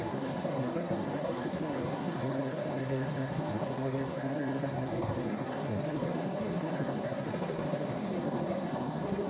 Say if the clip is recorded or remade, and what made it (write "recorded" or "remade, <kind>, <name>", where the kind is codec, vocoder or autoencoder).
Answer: remade, codec, SNAC